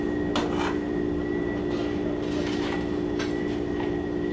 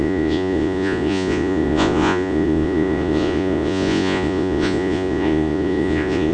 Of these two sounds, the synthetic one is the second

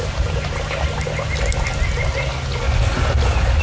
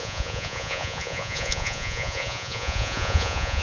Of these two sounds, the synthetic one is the second